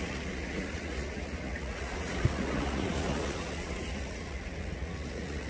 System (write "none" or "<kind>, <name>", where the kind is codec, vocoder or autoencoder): vocoder, Vocos